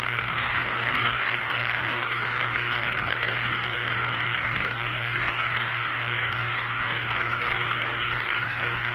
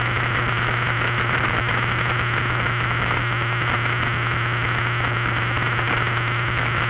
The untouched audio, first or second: second